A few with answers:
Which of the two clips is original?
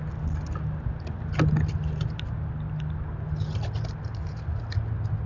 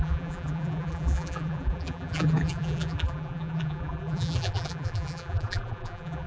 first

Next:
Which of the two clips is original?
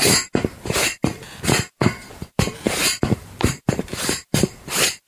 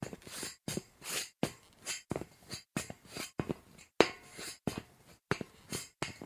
second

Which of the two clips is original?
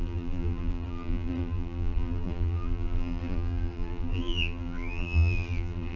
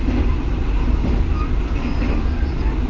second